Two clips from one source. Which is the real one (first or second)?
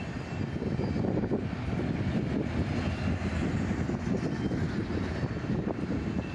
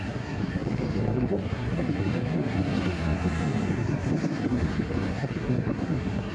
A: first